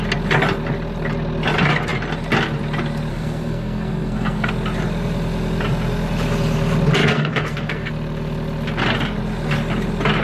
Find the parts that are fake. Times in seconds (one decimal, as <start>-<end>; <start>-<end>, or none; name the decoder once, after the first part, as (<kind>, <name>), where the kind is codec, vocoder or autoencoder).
3.1-4.5 (codec, SNAC); 7.0-7.9